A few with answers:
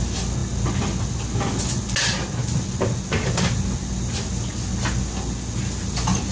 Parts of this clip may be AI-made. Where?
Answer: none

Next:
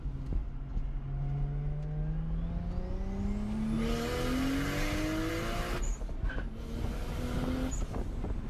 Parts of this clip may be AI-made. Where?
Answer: none

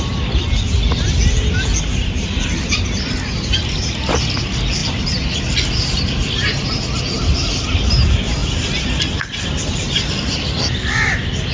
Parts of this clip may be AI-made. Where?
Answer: none

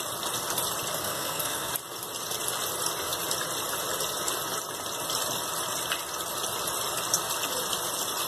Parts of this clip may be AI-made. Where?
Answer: 1.0-1.7 (codec, SNAC)

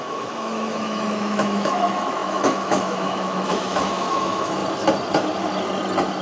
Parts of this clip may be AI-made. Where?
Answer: 0.0-4.6 (autoencoder, DAC-VAE)

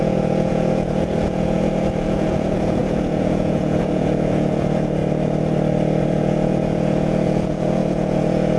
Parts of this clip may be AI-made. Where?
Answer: 0.0-5.0 (vocoder, Vocos); 6.0-8.6

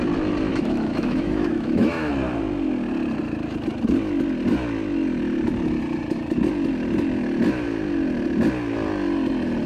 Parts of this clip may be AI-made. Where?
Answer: 0.5-2.1 (autoencoder, DAC-VAE)

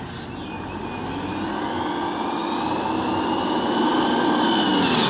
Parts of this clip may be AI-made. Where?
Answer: none